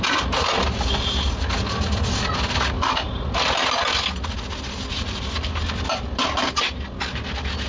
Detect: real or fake real